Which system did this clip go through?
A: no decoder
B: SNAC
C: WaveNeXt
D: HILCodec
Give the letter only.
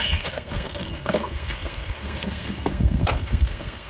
B